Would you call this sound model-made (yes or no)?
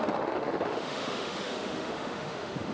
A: yes